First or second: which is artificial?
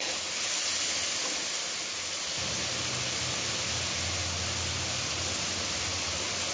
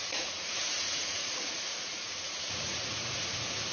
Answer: second